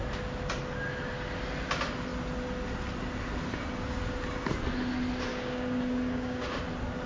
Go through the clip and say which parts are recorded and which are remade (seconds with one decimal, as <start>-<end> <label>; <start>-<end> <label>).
0.0-5.3 recorded; 5.3-6.6 remade; 6.6-7.1 recorded